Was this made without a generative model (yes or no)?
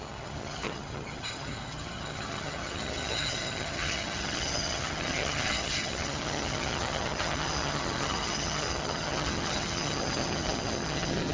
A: no